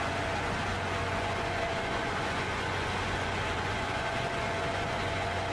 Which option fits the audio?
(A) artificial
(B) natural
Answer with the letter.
A